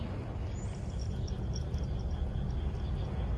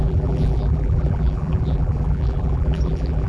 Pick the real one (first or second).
first